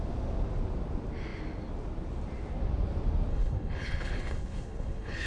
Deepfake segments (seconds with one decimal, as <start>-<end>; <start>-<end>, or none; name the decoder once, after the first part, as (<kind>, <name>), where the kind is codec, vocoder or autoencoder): 3.3-5.3 (codec, HILCodec)